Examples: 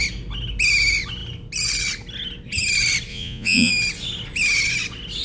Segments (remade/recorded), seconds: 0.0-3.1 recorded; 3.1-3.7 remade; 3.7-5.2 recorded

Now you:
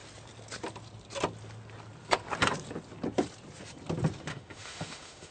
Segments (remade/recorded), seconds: 0.0-4.3 recorded; 4.3-5.3 remade

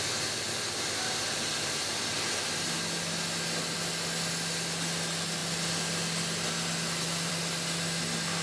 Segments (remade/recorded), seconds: 0.0-8.4 recorded

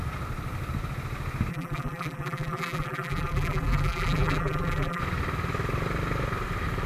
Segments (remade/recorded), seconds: 0.0-1.5 recorded; 1.5-5.0 remade; 5.0-6.9 recorded

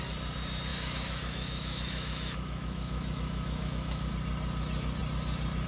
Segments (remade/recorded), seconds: 0.0-0.7 recorded; 0.7-4.1 remade; 4.1-5.7 recorded

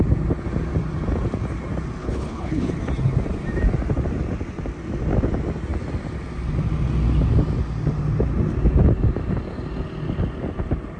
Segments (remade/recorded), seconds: 0.0-2.0 recorded; 2.0-2.7 remade; 2.7-11.0 recorded